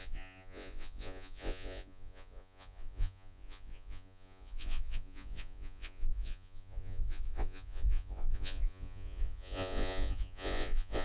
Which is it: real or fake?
fake